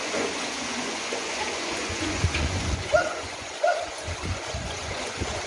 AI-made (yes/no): yes